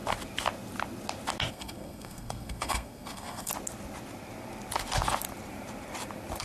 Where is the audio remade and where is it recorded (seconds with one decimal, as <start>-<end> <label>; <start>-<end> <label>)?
0.0-1.5 recorded; 1.5-3.5 remade; 3.5-6.4 recorded